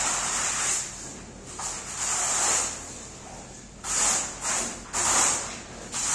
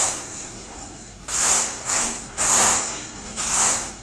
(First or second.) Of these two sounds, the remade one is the second